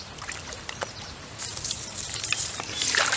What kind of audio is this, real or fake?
fake